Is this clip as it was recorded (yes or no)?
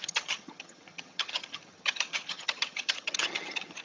no